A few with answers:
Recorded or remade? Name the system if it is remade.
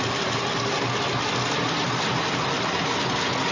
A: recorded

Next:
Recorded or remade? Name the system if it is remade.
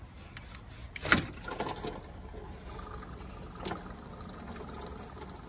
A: recorded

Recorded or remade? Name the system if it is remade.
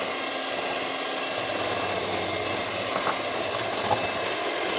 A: recorded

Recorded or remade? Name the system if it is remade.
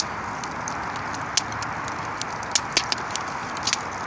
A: recorded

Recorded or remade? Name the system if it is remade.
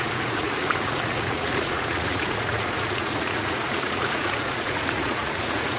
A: remade, vocoder, Vocos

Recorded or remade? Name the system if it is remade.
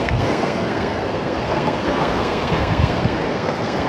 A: remade, codec, SNAC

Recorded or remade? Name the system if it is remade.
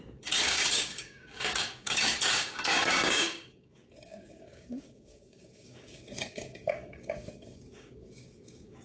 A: remade, codec, DAC